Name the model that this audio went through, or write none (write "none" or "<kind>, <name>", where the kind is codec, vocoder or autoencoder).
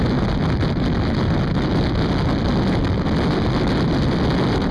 none